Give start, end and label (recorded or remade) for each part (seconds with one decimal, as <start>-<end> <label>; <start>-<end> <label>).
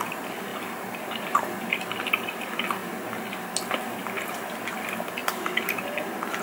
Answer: 0.0-0.5 recorded; 0.5-1.9 remade; 1.9-5.2 recorded; 5.2-5.8 remade; 5.8-6.4 recorded